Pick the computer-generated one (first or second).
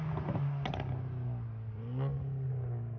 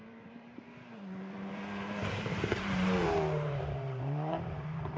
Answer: second